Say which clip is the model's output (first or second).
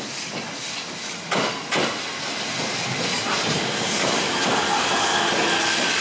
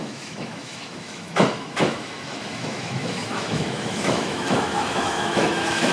second